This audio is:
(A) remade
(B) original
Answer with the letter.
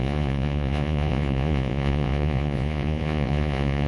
A